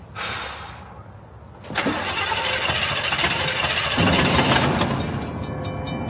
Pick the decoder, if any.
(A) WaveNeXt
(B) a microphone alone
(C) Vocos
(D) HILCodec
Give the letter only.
B